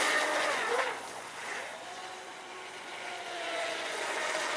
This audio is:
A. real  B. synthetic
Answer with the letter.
B